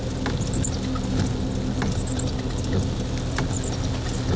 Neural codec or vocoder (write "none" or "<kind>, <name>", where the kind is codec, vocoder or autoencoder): none